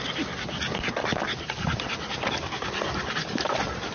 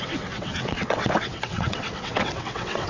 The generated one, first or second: second